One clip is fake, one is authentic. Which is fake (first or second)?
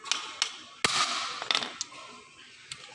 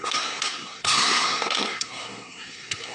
second